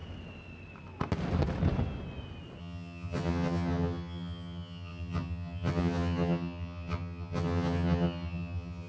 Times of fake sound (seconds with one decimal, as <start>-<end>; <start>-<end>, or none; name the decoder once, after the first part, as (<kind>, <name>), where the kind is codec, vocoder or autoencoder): 2.6-8.9 (vocoder, HiFi-GAN)